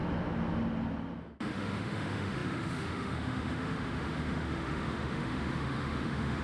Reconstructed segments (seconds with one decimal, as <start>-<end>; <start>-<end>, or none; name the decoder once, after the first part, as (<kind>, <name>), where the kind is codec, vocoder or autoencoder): 1.2-6.4 (autoencoder, DAC-VAE)